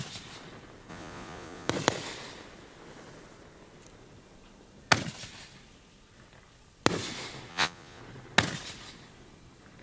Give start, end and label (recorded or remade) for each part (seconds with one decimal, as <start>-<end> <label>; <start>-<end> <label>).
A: 0.0-0.9 recorded; 0.9-1.7 remade; 1.7-7.5 recorded; 7.5-8.0 remade; 8.0-9.8 recorded